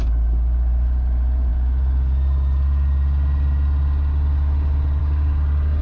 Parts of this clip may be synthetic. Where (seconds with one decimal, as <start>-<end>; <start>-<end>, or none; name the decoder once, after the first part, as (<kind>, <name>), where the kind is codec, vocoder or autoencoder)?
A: none